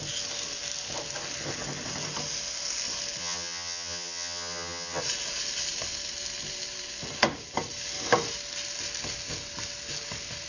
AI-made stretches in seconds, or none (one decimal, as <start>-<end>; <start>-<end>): 3.2-5.0